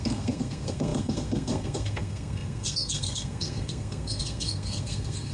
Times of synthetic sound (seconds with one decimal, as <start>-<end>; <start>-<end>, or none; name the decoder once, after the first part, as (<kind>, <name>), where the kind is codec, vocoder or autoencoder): 0.0-5.3 (codec, SNAC)